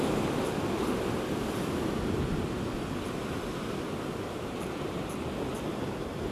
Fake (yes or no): no